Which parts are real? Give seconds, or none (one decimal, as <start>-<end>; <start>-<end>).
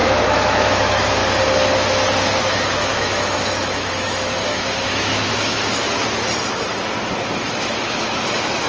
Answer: 1.2-2.4; 5.8-7.4